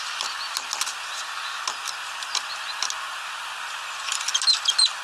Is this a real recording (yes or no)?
yes